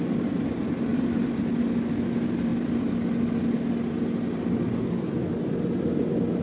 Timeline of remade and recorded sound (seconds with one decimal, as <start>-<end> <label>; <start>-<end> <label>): 0.0-6.4 recorded